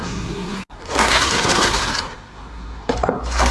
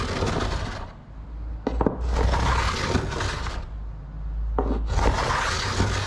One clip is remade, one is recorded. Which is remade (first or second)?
first